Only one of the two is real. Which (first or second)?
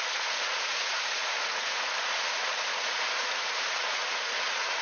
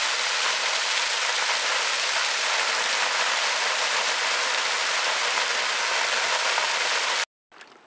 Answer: second